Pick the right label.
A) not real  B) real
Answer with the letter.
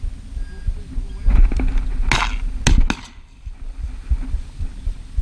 B